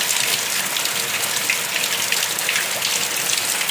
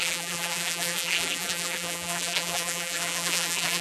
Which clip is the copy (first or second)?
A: second